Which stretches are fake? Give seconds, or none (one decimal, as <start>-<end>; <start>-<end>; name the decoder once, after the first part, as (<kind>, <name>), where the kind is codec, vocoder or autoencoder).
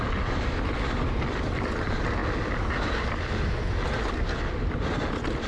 none